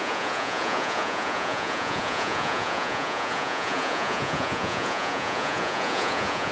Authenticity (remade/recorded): remade